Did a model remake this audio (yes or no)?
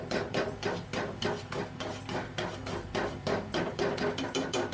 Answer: yes